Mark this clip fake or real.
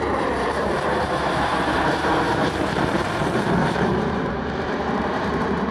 fake